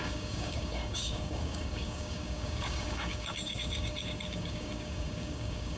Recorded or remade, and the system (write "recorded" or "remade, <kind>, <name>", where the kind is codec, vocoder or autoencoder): remade, codec, DAC